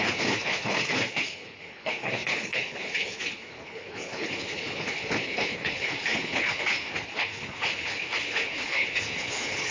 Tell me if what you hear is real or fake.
fake